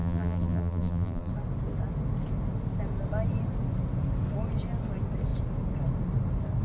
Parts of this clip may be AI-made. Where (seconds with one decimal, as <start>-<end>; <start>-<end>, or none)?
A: 0.0-1.3